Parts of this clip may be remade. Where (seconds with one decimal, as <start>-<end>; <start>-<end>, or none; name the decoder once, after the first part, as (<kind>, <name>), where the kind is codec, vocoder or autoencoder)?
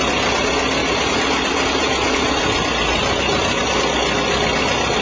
0.8-3.8 (vocoder, BigVGAN v2)